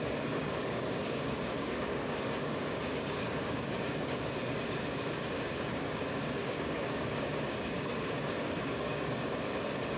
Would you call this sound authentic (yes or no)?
no